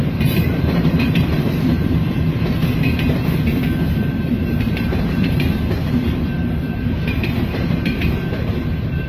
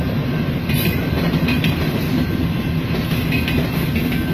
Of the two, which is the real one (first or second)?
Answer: second